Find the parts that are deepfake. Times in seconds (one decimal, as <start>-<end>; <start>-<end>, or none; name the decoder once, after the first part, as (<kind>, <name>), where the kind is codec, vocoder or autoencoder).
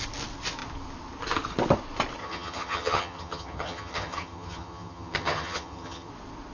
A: 2.2-6.1 (vocoder, HiFi-GAN)